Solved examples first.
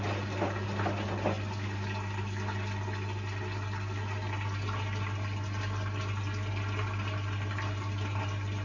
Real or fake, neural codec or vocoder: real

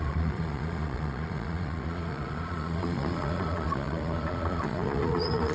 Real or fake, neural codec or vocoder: fake, vocoder, Vocos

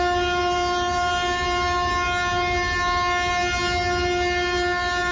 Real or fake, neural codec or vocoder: real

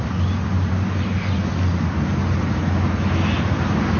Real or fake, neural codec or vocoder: real